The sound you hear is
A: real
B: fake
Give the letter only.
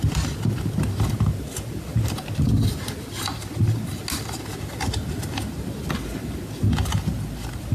A